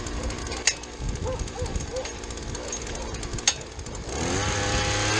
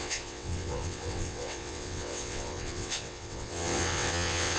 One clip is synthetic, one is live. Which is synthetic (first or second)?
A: second